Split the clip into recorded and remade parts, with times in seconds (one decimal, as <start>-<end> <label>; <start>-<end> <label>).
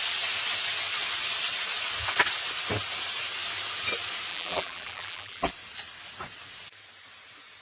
0.0-4.3 recorded; 4.3-5.5 remade; 5.5-7.6 recorded